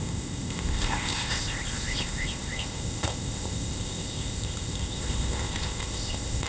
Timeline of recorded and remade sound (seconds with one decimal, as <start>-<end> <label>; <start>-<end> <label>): 0.0-6.5 remade